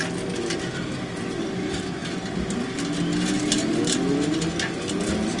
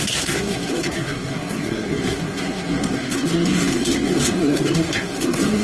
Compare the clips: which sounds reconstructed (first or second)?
second